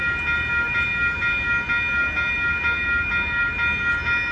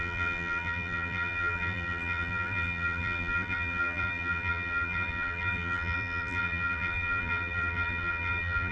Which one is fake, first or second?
second